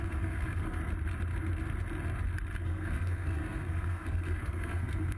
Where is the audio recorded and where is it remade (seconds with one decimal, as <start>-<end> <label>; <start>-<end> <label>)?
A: 0.0-0.8 remade; 0.8-2.6 recorded; 2.6-5.2 remade